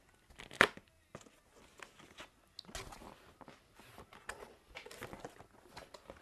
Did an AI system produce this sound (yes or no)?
no